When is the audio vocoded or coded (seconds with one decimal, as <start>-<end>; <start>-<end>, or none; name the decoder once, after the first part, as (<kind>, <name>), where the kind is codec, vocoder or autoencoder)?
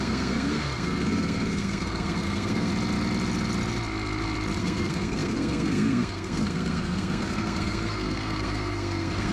0.0-2.7 (codec, SNAC); 4.6-9.3